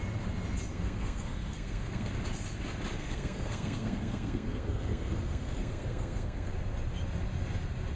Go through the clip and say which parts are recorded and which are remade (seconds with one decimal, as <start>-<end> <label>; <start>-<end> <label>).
0.0-0.7 recorded; 0.7-2.1 remade; 2.1-3.0 recorded; 3.0-6.5 remade; 6.5-8.0 recorded